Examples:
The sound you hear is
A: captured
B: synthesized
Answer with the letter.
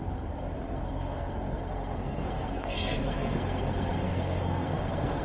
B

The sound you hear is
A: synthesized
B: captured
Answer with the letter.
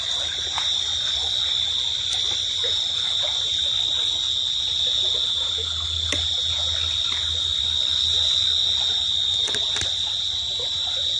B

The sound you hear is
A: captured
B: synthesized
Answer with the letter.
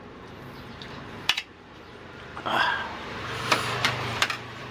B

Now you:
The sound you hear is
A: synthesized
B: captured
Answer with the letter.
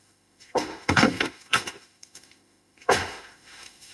A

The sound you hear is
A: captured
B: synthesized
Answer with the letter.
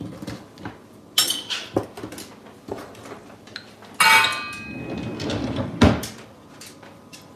A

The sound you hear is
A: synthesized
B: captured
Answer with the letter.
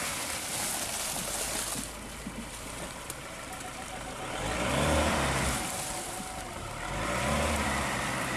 A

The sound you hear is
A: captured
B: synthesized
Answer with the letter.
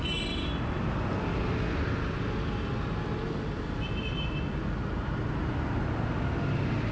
A